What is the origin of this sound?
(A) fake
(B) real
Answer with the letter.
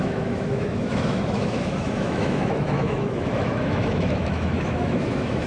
A